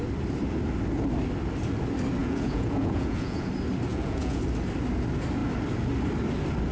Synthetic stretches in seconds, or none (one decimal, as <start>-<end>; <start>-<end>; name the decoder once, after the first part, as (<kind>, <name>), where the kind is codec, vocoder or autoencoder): 2.2-3.5 (vocoder, Vocos); 3.9-4.4